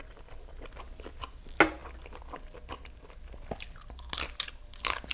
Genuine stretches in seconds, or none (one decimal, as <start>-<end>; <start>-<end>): 0.0-5.1